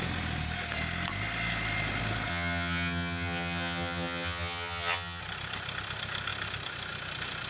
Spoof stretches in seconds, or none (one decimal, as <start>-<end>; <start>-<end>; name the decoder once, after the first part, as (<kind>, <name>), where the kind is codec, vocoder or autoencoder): 2.3-5.2 (vocoder, HiFi-GAN)